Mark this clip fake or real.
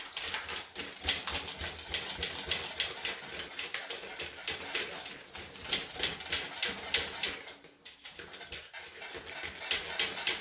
real